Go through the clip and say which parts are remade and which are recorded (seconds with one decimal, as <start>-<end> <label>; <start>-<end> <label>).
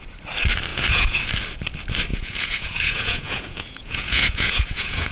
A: 0.0-0.7 recorded; 0.7-1.2 remade; 1.2-2.1 recorded; 2.1-5.1 remade